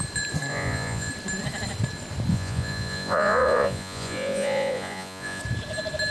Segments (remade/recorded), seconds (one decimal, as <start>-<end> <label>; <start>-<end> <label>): 0.0-0.5 recorded; 0.5-1.1 remade; 1.1-2.3 recorded; 2.3-5.4 remade; 5.4-6.1 recorded